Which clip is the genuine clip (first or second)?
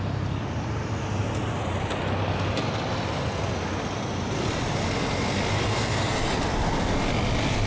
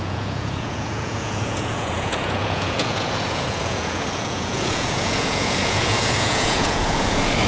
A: first